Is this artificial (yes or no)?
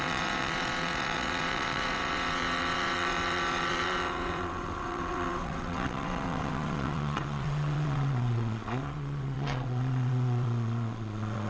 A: yes